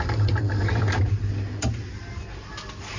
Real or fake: real